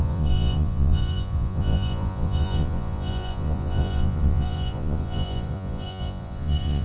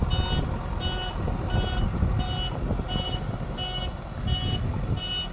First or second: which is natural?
second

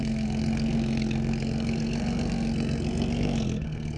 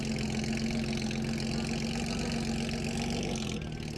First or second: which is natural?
second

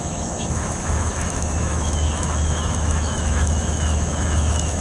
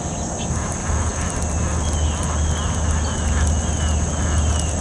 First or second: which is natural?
second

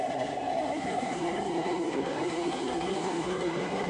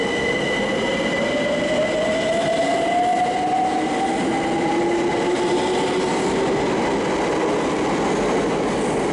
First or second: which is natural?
second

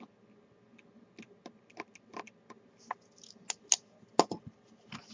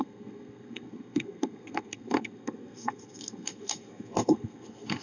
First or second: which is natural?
first